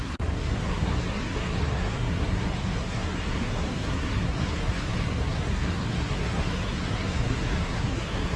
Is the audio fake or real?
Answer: fake